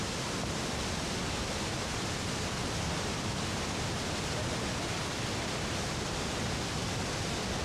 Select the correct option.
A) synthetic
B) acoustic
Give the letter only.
B